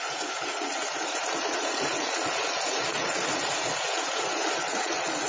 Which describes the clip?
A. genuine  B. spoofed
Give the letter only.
B